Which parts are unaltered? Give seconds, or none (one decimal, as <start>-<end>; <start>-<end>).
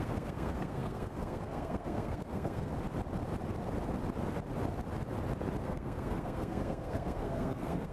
2.7-5.6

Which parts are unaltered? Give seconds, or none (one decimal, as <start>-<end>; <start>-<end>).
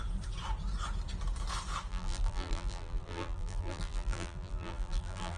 0.0-1.9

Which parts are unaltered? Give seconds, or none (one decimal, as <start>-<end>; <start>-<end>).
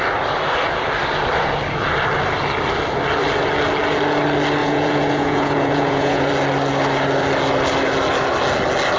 0.0-4.6; 6.3-9.0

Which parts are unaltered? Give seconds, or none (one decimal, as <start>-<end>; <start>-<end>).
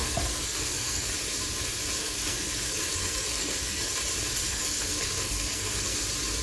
1.1-2.0; 3.9-4.4; 6.0-6.4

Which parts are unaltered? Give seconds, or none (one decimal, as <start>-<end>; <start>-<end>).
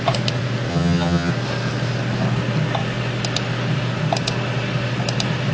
0.0-0.7; 1.3-5.5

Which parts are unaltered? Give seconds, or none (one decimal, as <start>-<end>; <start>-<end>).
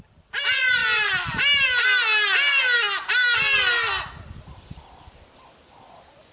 0.0-6.3